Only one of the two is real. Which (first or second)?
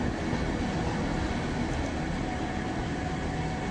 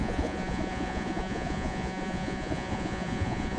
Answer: first